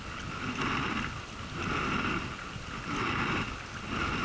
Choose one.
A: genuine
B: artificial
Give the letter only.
A